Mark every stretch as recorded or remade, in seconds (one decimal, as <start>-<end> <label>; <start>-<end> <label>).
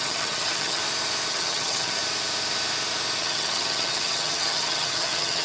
0.0-0.8 remade; 0.8-1.3 recorded; 1.3-2.0 remade; 2.0-3.2 recorded; 3.2-5.4 remade